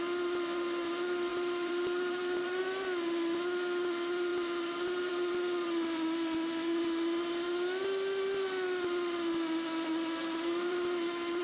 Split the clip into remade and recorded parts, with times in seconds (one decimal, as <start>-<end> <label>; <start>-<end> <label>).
0.0-1.3 recorded; 1.3-2.6 remade; 2.6-10.2 recorded; 10.2-11.4 remade